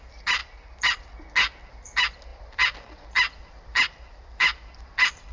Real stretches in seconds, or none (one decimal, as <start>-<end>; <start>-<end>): 0.0-2.3